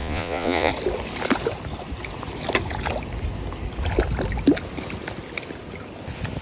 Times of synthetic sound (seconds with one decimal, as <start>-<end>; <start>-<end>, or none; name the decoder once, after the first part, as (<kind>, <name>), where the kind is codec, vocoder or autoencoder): 0.0-0.7 (vocoder, Vocos)